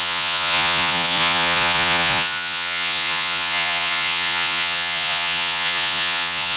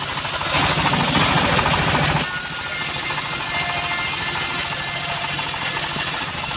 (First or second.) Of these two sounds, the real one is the second